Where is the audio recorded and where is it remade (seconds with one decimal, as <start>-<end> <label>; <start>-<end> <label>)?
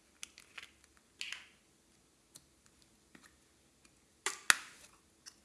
0.0-5.4 recorded